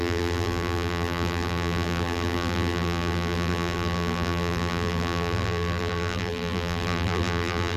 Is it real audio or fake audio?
fake